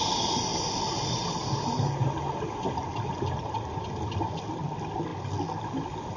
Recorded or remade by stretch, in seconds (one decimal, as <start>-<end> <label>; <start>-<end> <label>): 0.0-6.2 recorded

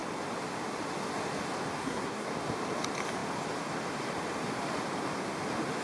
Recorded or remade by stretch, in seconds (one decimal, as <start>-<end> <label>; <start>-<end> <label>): 0.0-1.8 recorded; 1.8-2.3 remade; 2.3-5.8 recorded

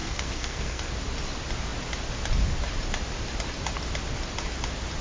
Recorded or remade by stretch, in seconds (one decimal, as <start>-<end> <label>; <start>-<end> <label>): 0.0-0.9 remade; 0.9-5.0 recorded

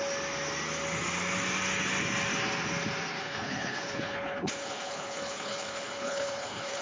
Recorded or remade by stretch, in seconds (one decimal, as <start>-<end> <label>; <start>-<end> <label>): 0.0-3.2 recorded; 3.2-6.8 remade

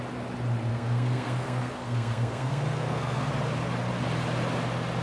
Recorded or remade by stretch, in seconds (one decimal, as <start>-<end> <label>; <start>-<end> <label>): 0.0-0.7 recorded; 0.7-3.3 remade; 3.3-5.0 recorded

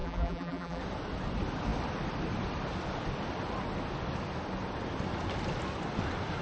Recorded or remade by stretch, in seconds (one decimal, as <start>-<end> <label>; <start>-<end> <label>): 0.0-0.8 remade; 0.8-6.4 recorded

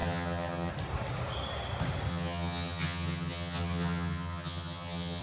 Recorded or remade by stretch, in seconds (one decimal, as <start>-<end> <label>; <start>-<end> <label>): 0.0-0.7 remade; 0.7-2.1 recorded; 2.1-5.2 remade

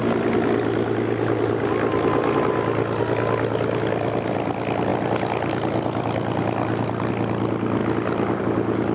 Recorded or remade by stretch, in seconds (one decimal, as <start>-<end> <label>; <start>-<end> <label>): 0.0-8.9 recorded